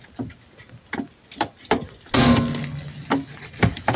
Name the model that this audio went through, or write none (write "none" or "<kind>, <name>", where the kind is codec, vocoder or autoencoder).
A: none